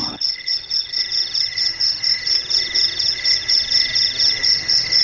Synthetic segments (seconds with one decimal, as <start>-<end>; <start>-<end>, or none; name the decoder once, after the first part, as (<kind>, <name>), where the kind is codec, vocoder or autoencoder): 0.0-1.0 (codec, HILCodec)